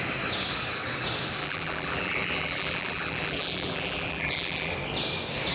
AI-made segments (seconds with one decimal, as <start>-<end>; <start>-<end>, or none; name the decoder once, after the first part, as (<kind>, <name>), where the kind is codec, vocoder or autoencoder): 1.4-4.7 (vocoder, BigVGAN v2)